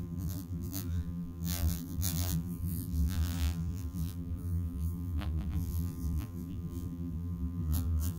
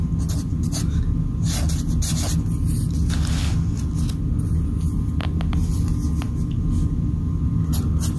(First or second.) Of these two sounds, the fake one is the first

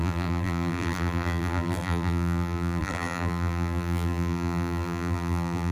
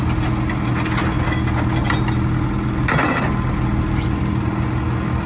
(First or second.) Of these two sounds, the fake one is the first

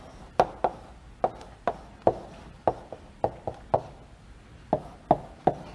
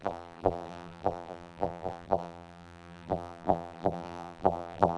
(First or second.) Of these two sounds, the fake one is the second